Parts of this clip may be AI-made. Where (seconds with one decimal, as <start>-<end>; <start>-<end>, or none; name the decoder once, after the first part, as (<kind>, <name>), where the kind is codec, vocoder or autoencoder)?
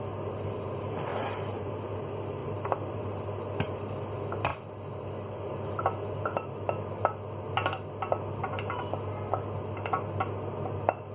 1.1-1.7 (vocoder, BigVGAN v2); 2.4-3.0